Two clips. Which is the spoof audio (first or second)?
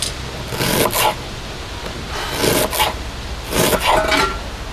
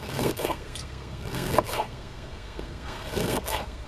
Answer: second